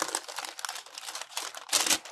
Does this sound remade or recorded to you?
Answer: recorded